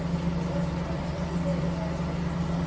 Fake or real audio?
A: real